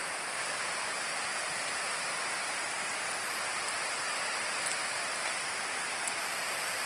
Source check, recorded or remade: recorded